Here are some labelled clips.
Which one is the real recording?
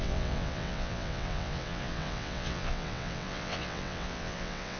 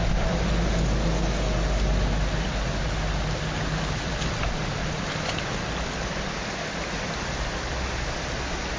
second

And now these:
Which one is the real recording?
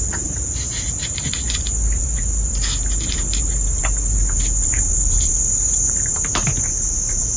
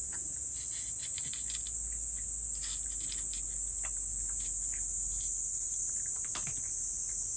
second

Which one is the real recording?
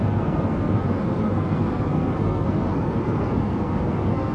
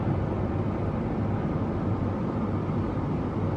second